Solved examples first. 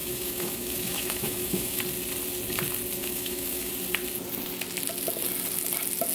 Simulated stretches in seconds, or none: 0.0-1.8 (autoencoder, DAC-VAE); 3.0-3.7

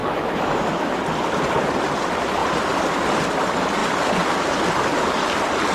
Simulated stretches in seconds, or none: 0.0-1.0 (autoencoder, DAC-VAE)

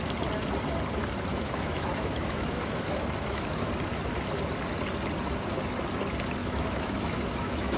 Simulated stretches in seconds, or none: 1.3-3.7 (autoencoder, DAC-VAE); 6.4-7.8

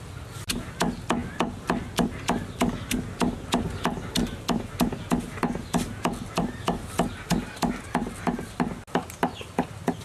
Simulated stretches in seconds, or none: none